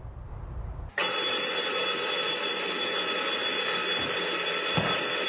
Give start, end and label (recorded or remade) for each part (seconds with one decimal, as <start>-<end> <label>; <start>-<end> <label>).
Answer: 0.0-5.3 recorded